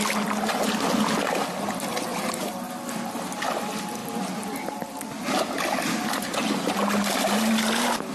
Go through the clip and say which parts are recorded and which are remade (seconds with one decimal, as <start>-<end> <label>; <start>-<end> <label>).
0.0-8.1 recorded

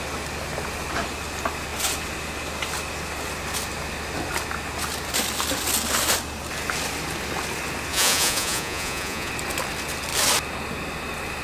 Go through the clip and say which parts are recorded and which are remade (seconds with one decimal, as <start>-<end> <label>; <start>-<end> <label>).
0.0-7.9 recorded; 7.9-9.3 remade; 9.3-11.4 recorded

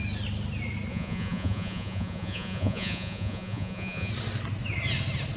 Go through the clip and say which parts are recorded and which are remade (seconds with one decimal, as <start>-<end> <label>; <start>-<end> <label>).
0.0-0.9 recorded; 0.9-4.1 remade; 4.1-5.4 recorded

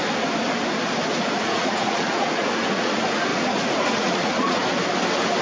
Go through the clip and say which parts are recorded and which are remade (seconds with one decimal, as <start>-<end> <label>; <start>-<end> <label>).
0.0-1.1 recorded; 1.1-2.9 remade; 2.9-3.3 recorded; 3.3-4.6 remade; 4.6-5.4 recorded

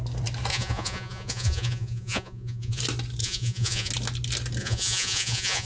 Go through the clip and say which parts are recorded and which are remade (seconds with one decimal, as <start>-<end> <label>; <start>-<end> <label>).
0.0-0.5 recorded; 0.5-2.8 remade; 2.8-3.2 recorded; 3.2-3.9 remade; 3.9-4.6 recorded; 4.6-5.7 remade